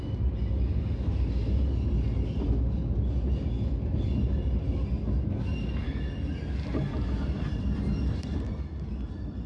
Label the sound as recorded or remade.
recorded